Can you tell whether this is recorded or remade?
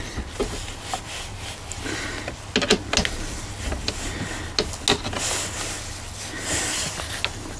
recorded